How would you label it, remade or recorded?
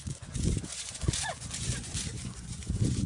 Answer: remade